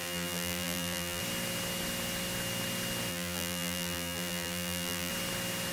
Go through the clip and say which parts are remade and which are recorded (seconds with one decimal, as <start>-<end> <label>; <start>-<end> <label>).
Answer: 0.0-1.2 remade; 1.2-3.1 recorded; 3.1-5.1 remade; 5.1-5.7 recorded